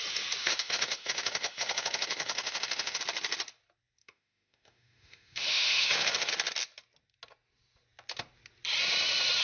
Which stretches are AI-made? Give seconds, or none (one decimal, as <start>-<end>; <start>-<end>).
0.4-3.0; 4.0-6.3